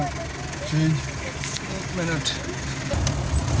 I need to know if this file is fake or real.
real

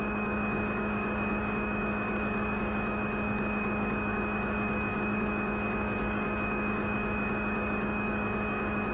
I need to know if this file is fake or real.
fake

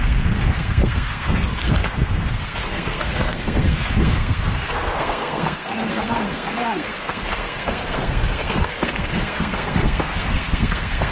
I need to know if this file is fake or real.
fake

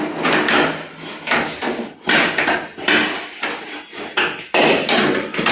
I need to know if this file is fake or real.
real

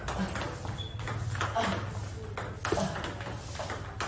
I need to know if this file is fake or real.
real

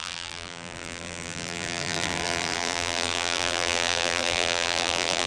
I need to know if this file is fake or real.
fake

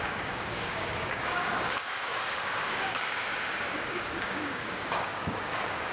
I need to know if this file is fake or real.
fake